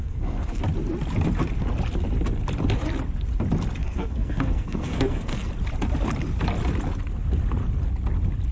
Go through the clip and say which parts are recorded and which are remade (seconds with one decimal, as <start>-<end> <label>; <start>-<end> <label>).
0.0-0.6 remade; 0.6-3.8 recorded; 3.8-5.5 remade; 5.5-8.5 recorded